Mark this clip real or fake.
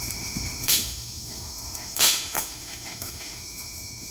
fake